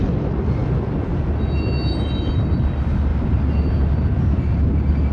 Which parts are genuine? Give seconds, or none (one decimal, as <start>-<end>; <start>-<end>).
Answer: 0.0-5.1